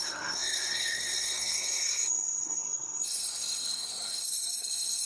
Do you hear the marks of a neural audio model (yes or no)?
yes